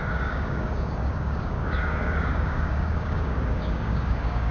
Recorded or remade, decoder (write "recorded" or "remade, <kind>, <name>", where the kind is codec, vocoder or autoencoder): remade, codec, DAC